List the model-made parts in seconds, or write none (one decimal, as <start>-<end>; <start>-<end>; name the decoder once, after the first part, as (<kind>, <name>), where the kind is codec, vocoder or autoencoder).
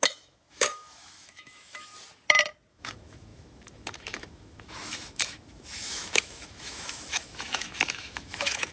0.0-1.9 (autoencoder, DAC-VAE); 2.7-8.7